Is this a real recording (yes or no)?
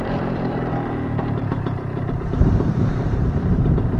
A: yes